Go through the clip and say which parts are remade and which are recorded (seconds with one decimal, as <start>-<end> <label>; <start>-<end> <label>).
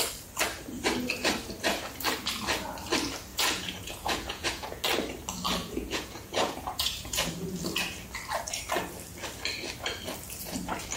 0.0-3.3 recorded; 3.3-4.8 remade; 4.8-5.6 recorded; 5.6-7.6 remade; 7.6-11.0 recorded